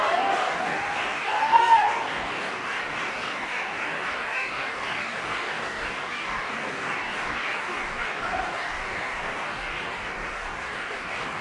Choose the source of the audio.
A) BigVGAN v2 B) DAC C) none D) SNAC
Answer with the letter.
B